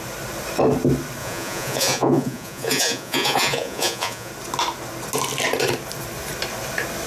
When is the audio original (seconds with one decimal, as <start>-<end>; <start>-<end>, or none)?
0.0-1.2; 4.3-7.1